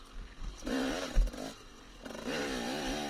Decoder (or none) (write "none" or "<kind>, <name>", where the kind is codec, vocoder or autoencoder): none